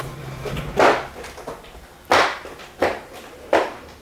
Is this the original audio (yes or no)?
yes